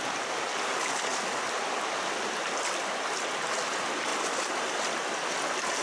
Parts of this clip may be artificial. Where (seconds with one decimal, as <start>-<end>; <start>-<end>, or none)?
4.1-5.3